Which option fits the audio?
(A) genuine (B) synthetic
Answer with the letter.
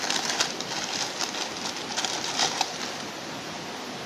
A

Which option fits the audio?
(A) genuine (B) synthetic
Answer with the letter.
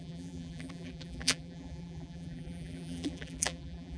B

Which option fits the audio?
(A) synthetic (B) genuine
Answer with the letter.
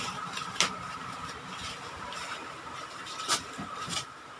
A